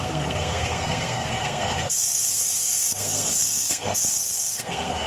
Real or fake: fake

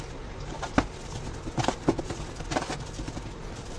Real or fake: real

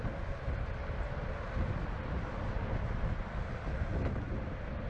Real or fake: real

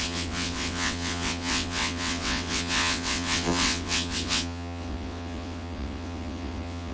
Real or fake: fake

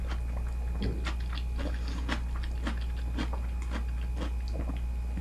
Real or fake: real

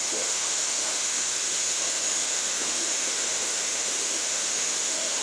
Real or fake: fake